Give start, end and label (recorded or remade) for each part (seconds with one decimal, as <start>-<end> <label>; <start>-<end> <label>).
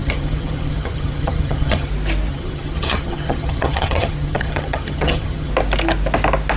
0.0-1.9 remade; 1.9-2.3 recorded; 2.3-5.5 remade; 5.5-6.6 recorded